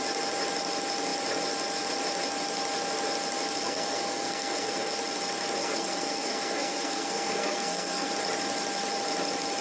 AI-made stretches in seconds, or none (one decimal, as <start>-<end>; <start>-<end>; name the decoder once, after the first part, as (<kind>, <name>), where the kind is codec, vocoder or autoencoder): 3.6-4.9 (codec, SNAC); 5.6-8.1

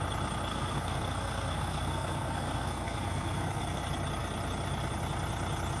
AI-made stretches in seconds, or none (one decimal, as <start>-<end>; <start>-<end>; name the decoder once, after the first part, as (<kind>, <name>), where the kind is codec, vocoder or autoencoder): 0.5-3.8 (codec, SNAC)

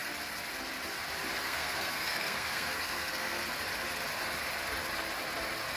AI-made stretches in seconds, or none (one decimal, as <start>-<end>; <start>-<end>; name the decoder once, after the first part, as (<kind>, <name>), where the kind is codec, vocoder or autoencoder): 1.4-3.4 (codec, SNAC)

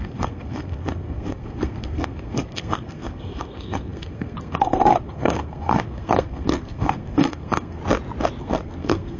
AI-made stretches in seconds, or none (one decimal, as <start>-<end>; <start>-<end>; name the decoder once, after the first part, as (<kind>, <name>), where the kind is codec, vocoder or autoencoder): 0.0-7.8 (codec, SNAC); 8.4-9.2

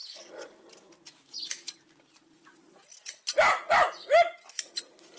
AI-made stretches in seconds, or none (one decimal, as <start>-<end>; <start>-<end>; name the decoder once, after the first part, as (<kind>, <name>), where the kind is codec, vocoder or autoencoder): none

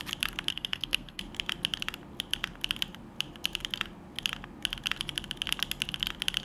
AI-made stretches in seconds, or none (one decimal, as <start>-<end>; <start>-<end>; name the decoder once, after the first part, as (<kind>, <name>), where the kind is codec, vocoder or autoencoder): 0.5-1.2 (codec, SNAC)